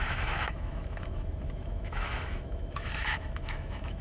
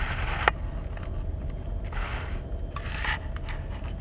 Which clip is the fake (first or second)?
first